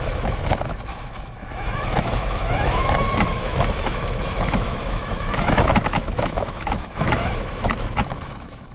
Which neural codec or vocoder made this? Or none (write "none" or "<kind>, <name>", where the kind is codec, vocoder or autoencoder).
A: autoencoder, DAC-VAE